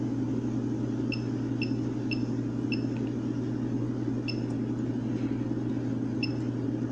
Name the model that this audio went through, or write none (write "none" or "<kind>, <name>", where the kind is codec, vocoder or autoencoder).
none